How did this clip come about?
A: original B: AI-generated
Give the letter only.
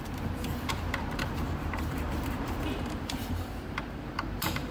B